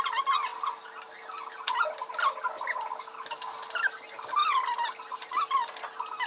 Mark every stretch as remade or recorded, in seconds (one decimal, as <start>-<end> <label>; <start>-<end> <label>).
0.0-6.3 recorded